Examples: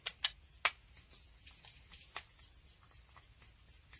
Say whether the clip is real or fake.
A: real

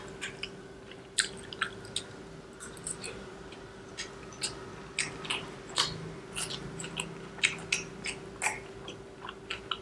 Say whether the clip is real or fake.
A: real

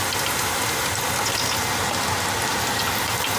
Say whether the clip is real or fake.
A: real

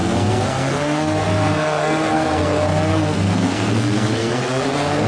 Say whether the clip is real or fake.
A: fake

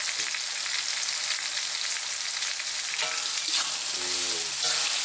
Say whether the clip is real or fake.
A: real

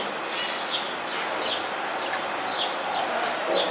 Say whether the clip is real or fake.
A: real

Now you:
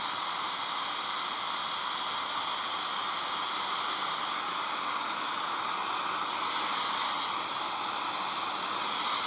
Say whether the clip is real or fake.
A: real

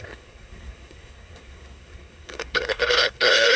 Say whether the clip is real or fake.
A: fake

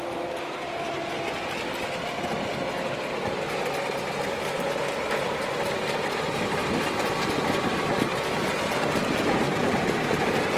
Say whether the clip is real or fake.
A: real